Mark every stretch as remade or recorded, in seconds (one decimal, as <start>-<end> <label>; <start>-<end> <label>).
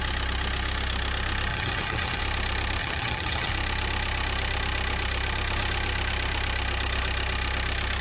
0.0-1.5 recorded; 1.5-2.2 remade; 2.2-2.8 recorded; 2.8-3.5 remade; 3.5-8.0 recorded